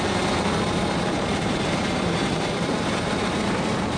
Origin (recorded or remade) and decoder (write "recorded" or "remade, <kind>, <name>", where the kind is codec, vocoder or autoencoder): remade, vocoder, BigVGAN v2